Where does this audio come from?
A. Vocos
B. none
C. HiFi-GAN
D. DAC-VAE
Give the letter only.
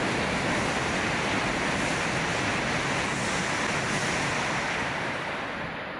B